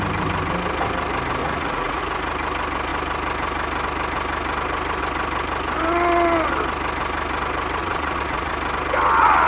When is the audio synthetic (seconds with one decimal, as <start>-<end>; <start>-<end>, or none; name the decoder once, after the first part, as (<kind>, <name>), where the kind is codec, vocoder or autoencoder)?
1.4-2.0 (vocoder, Vocos); 7.8-8.5